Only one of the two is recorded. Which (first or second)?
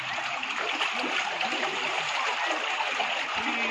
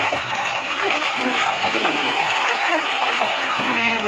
first